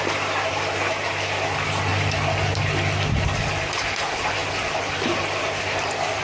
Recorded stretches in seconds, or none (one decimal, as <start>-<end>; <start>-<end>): 0.0-6.2